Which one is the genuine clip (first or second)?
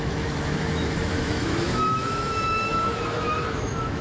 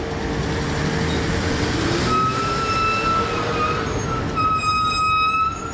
second